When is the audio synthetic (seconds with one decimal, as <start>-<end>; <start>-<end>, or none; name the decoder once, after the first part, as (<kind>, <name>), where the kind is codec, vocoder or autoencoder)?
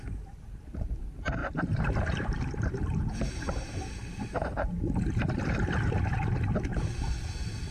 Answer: 1.4-4.8 (vocoder, BigVGAN v2); 6.7-7.7